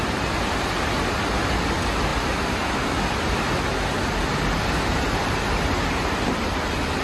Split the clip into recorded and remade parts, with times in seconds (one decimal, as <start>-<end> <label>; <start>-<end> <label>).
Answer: 0.0-1.2 remade; 1.2-7.0 recorded